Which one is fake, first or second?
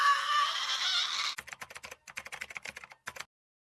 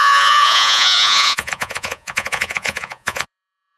second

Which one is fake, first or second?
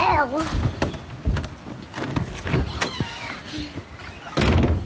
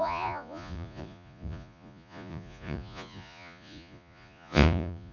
second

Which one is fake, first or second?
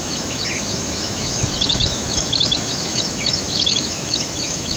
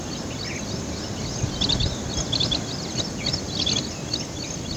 first